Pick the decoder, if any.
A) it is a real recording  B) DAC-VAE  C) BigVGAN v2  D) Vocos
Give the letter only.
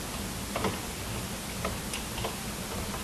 A